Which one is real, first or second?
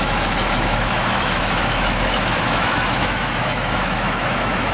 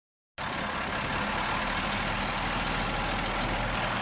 second